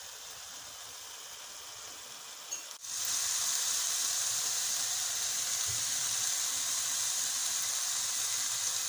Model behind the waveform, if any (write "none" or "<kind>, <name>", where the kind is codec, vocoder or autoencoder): none